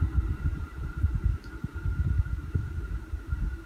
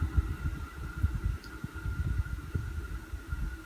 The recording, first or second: second